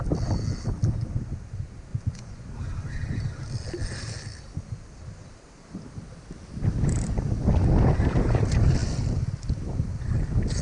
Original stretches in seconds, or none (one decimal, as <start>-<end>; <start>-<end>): 0.0-1.9; 2.5-10.6